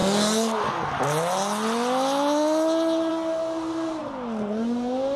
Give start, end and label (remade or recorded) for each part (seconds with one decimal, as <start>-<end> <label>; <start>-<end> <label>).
0.0-5.2 recorded